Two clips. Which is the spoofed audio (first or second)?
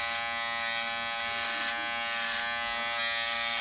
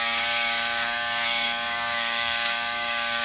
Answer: second